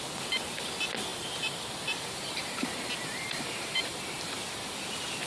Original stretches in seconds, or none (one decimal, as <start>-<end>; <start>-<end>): 0.0-1.1; 4.2-5.3